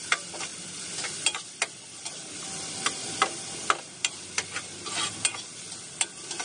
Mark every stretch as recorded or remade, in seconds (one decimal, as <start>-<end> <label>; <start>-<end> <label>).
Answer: 0.0-6.4 recorded